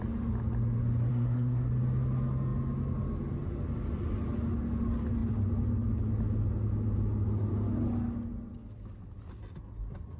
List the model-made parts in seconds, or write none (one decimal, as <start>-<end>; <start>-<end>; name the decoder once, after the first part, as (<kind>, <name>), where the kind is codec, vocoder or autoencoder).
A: 1.1-1.7 (codec, SNAC)